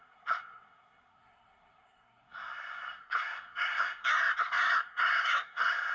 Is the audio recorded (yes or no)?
no